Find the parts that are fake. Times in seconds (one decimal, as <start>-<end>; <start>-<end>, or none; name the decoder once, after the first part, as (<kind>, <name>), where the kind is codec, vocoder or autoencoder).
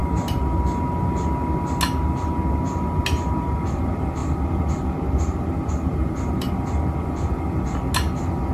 none